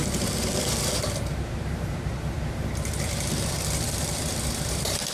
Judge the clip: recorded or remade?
remade